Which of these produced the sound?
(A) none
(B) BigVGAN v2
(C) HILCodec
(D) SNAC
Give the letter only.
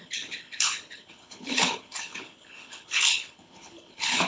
C